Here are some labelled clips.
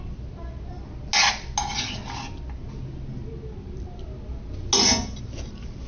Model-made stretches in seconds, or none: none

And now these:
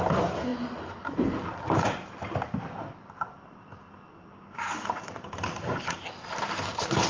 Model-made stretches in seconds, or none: none

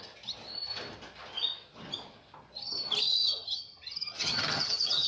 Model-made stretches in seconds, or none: 3.1-5.1 (vocoder, HiFi-GAN)

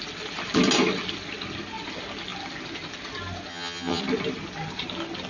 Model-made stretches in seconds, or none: 3.5-4.0 (vocoder, HiFi-GAN)

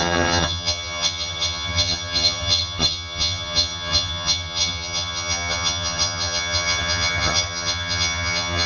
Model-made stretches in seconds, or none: 0.0-8.7 (vocoder, HiFi-GAN)